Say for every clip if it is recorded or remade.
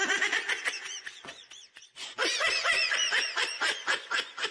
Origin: remade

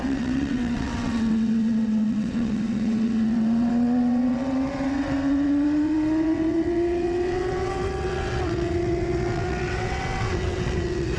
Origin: remade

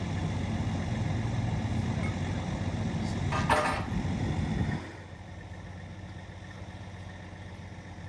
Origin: recorded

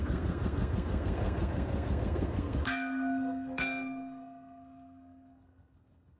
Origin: remade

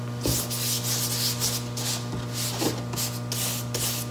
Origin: recorded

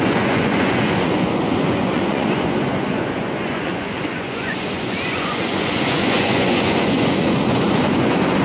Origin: remade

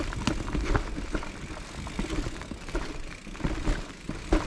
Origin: recorded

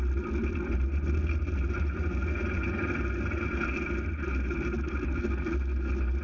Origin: recorded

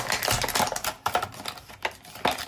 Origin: recorded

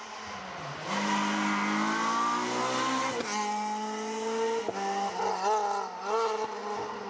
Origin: recorded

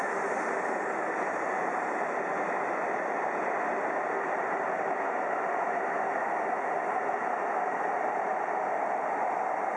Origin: recorded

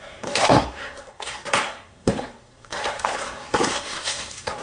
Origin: remade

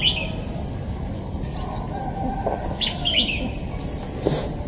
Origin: recorded